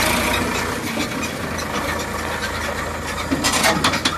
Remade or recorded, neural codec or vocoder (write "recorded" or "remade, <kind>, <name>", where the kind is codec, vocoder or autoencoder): recorded